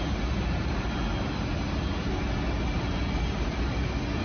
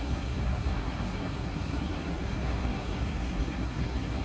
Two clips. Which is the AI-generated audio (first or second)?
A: second